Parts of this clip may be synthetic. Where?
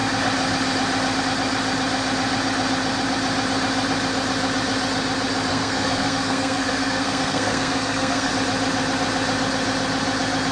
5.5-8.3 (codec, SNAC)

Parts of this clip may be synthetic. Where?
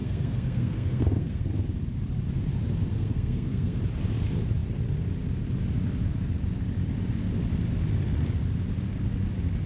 0.0-1.5 (codec, SNAC); 2.9-3.8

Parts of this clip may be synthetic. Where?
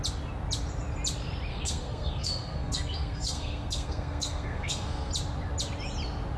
1.5-5.1 (codec, SNAC)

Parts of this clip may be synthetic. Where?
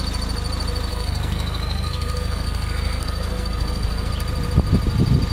0.9-4.1 (codec, SNAC)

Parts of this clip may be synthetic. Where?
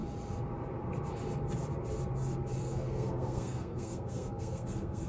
2.6-5.1 (codec, SNAC)